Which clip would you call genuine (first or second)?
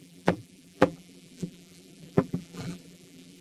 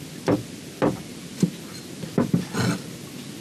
second